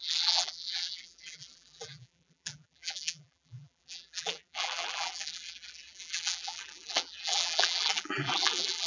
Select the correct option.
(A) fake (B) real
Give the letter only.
A